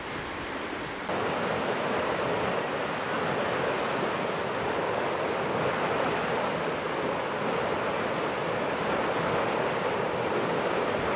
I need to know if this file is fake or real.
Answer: real